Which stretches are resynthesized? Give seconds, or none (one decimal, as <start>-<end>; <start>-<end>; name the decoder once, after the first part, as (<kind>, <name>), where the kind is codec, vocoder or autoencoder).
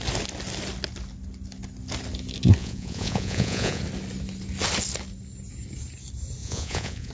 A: 2.6-3.8 (vocoder, Vocos); 6.4-7.1